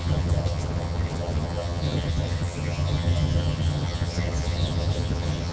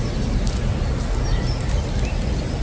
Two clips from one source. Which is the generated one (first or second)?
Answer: first